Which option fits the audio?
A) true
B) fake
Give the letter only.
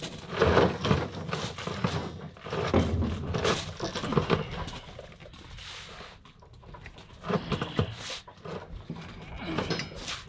A